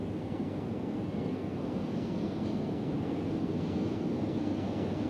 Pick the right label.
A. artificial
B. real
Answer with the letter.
A